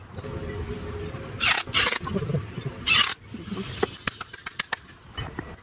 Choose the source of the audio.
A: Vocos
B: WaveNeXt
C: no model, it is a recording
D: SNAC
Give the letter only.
C